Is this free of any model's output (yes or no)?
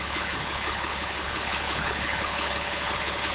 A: no